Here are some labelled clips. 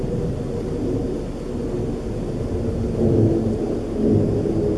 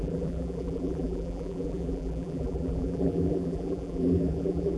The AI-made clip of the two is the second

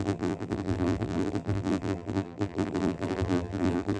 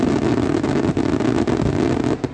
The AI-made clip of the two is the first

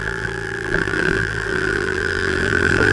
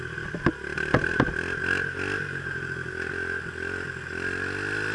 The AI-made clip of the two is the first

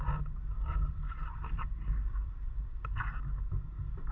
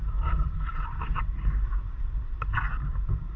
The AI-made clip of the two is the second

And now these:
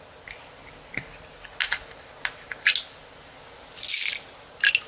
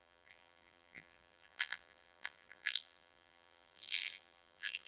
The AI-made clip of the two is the second